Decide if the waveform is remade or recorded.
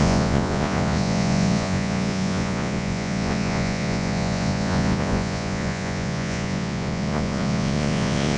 remade